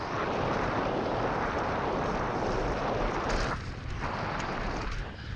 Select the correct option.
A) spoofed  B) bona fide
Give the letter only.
B